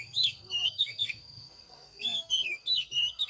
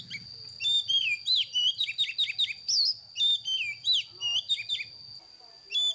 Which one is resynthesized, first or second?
first